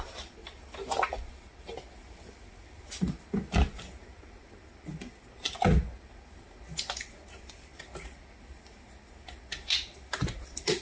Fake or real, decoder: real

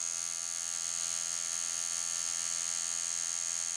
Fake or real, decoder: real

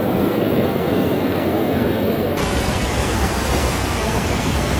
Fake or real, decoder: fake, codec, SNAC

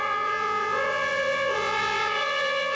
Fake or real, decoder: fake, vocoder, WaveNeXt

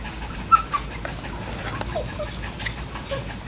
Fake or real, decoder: real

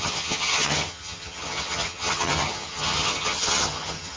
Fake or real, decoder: fake, vocoder, HiFi-GAN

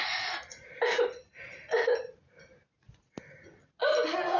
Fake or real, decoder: real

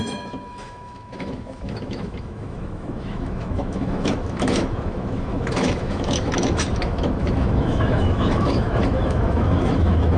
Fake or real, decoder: fake, autoencoder, DAC-VAE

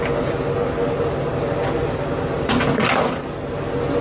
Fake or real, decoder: real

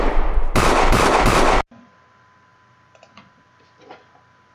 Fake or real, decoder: real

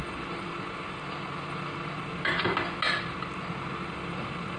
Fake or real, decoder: real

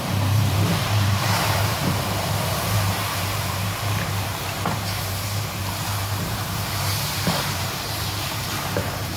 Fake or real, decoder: fake, vocoder, BigVGAN v2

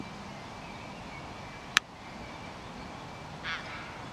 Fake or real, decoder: real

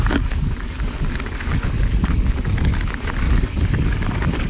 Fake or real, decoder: fake, codec, DAC